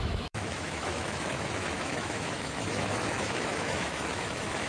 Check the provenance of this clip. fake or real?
fake